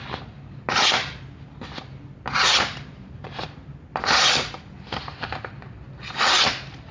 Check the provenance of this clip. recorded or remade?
recorded